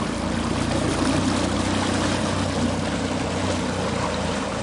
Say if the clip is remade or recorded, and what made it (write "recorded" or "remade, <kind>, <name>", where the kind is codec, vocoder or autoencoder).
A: recorded